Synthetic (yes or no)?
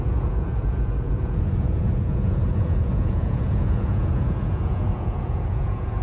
yes